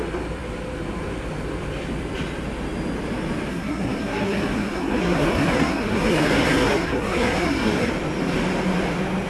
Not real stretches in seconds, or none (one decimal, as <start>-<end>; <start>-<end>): 3.5-7.9